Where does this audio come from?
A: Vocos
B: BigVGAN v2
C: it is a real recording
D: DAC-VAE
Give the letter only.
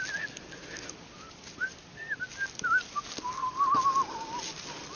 C